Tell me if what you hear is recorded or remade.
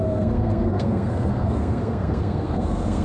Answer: remade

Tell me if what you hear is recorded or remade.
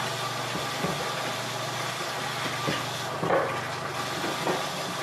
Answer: recorded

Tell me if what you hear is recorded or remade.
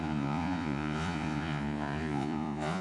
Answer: remade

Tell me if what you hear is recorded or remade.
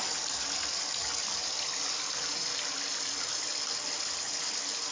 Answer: recorded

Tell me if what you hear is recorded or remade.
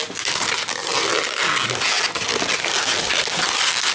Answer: recorded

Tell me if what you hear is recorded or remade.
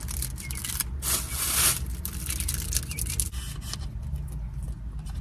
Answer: recorded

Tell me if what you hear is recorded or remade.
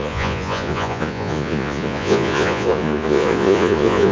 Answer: remade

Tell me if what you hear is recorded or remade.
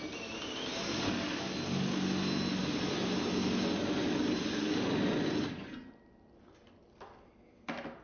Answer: recorded